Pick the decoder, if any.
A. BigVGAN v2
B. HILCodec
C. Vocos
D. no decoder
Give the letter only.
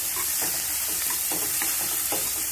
A